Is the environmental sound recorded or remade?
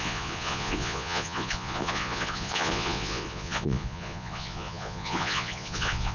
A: remade